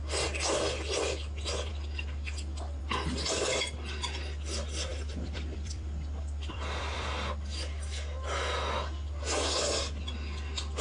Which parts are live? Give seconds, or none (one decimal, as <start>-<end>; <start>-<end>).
0.0-4.9; 7.1-10.8